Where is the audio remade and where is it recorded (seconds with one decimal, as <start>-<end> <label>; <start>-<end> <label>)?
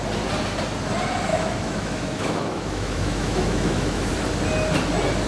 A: 0.0-1.3 recorded; 1.3-4.1 remade; 4.1-5.3 recorded